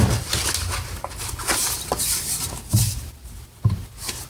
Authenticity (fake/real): real